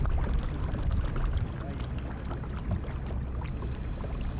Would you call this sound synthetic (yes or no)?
no